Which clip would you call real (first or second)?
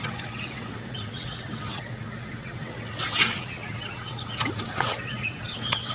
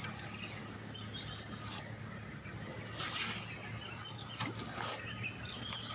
second